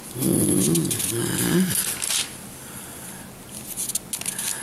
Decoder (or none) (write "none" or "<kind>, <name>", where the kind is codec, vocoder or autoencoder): none